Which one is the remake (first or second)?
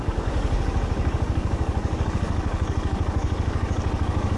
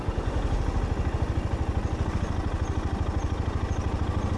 first